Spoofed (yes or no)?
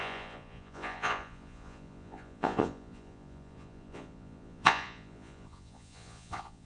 yes